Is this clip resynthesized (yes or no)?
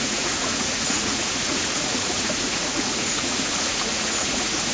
yes